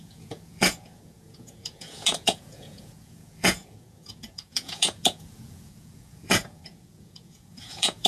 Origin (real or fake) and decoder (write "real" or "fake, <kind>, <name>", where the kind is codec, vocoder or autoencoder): fake, vocoder, Vocos